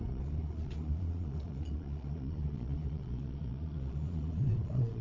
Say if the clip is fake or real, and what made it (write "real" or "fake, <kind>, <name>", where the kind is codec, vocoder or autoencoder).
fake, vocoder, Vocos